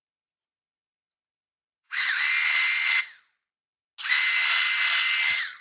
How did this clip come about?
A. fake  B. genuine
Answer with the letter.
B